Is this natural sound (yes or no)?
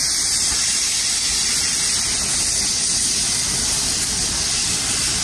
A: yes